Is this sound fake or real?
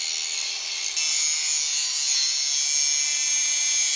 real